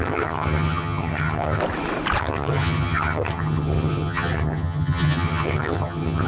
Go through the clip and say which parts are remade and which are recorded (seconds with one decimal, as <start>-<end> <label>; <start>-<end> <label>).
0.0-1.6 remade; 1.6-2.2 recorded; 2.2-6.3 remade